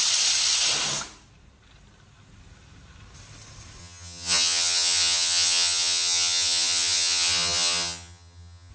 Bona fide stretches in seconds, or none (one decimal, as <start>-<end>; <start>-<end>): 0.0-3.8